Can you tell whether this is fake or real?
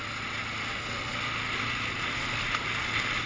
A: real